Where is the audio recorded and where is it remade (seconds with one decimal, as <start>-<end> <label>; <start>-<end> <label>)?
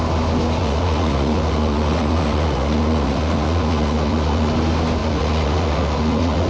0.0-0.6 recorded; 0.6-4.5 remade; 4.5-5.0 recorded; 5.0-6.5 remade